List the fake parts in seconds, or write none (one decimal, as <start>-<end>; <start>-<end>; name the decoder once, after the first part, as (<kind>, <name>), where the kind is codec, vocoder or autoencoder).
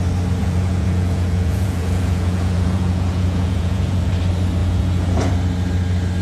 0.4-4.1 (vocoder, Vocos); 4.6-5.3